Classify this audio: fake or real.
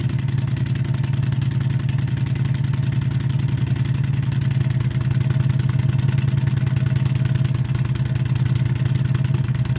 real